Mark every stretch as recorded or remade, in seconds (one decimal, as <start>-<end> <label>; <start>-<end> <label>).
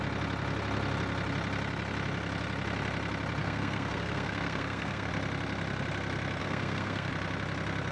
0.0-3.4 recorded; 3.4-5.1 remade; 5.1-6.4 recorded; 6.4-7.1 remade; 7.1-7.9 recorded